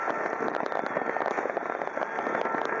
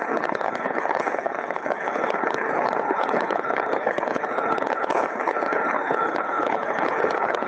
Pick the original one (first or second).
first